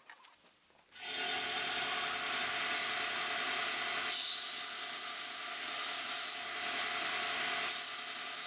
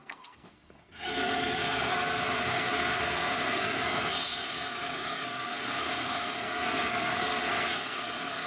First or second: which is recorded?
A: first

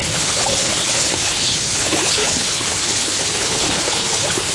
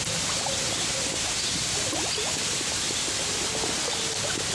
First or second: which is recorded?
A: second